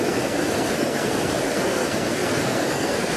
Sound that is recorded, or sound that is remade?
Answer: remade